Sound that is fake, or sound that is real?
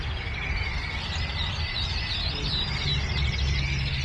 real